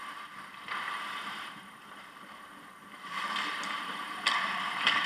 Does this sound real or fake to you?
fake